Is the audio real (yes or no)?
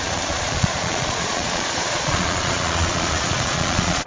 no